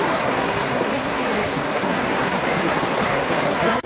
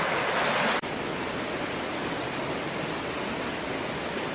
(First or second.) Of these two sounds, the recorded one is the second